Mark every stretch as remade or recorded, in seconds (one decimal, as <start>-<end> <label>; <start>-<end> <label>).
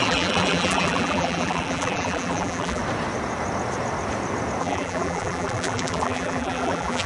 0.0-2.8 remade; 2.8-4.6 recorded; 4.6-7.1 remade